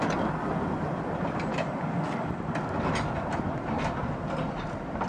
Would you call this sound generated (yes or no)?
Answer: no